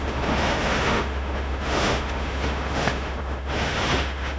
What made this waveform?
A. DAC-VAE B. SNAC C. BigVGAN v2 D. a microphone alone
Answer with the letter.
A